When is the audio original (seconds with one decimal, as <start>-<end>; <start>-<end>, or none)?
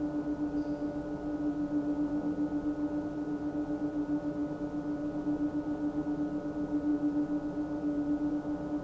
0.0-8.8